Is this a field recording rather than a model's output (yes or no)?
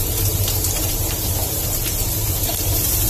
no